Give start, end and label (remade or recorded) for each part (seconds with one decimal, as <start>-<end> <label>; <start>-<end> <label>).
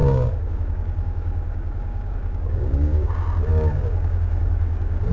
0.0-3.1 remade; 3.1-3.5 recorded; 3.5-5.1 remade